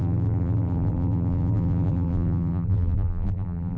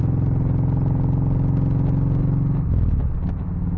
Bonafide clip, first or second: second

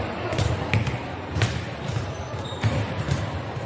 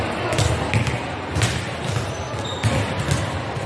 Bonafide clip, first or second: second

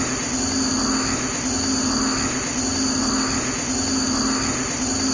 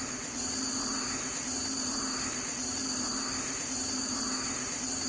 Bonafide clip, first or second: first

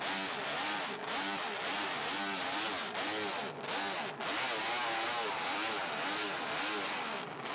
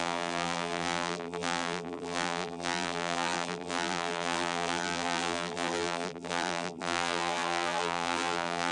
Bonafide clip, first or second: first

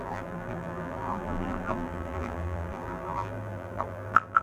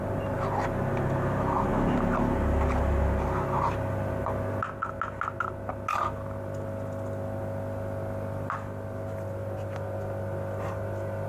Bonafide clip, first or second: second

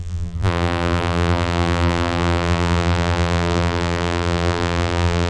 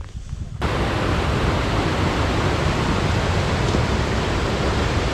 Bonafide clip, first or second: second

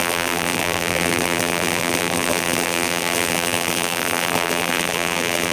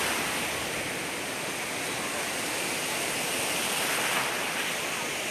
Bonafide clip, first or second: second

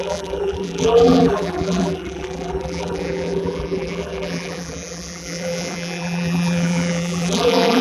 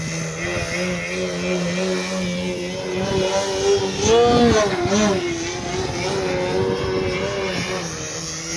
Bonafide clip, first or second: second